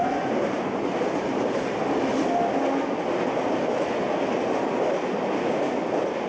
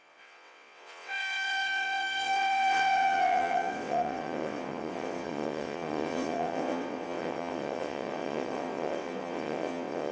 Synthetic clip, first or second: second